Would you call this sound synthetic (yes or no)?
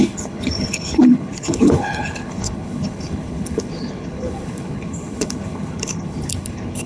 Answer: yes